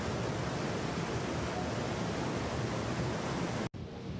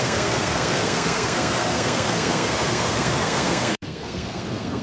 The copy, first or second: second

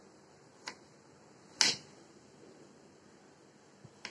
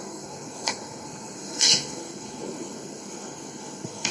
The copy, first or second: second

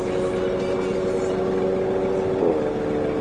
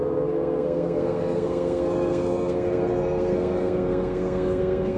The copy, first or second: second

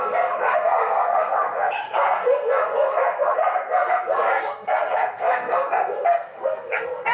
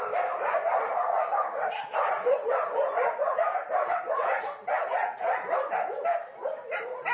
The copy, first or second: first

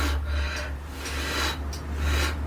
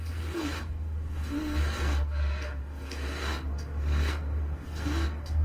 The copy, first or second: second